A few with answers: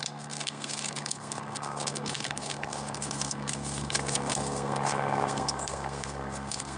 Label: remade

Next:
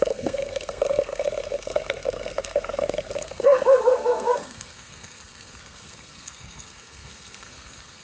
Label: remade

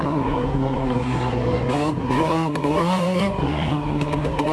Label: remade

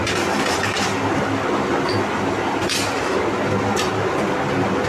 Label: recorded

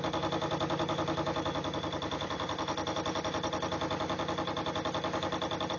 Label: recorded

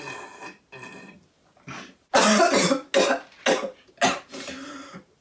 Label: recorded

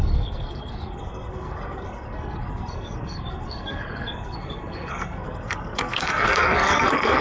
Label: remade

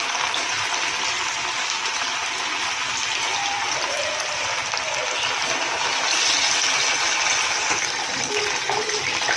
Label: recorded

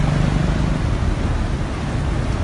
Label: recorded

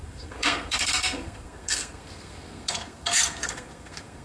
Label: remade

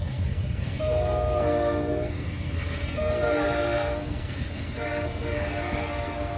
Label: remade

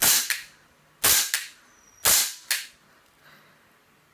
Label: recorded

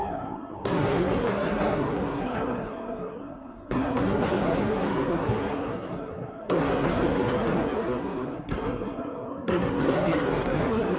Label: remade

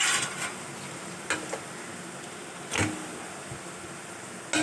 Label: recorded